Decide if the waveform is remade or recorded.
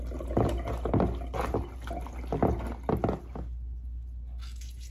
recorded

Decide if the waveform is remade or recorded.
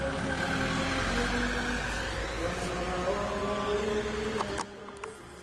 recorded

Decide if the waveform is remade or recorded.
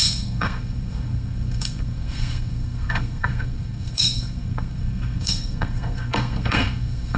remade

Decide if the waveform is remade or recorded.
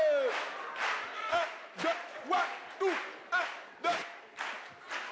recorded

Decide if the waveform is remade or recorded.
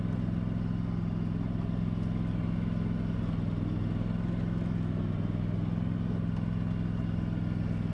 recorded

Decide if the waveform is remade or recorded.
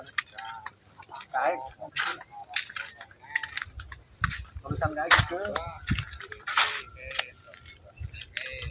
recorded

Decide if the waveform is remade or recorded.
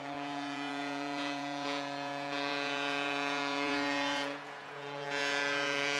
remade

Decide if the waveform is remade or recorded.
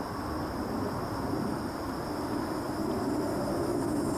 remade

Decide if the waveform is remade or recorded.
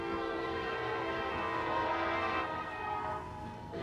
remade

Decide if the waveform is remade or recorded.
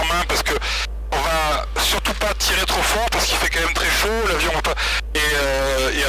recorded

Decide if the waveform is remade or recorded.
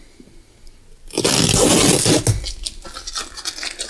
recorded